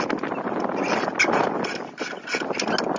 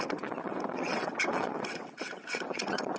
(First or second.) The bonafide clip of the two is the first